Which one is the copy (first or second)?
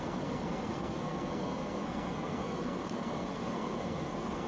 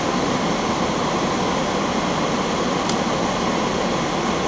first